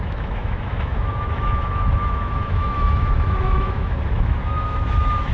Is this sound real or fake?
fake